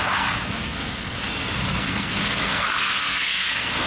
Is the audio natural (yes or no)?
no